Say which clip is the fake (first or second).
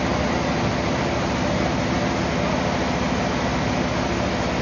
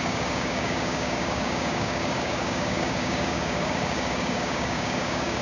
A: second